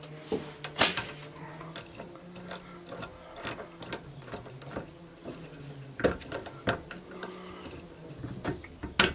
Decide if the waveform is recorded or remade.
recorded